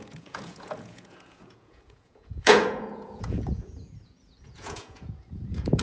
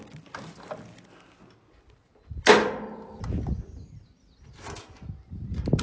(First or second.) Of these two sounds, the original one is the second